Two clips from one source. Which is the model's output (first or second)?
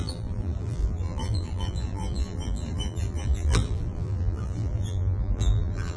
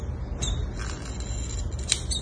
first